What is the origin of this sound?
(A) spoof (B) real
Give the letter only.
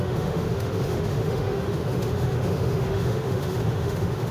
A